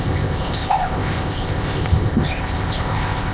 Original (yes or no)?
no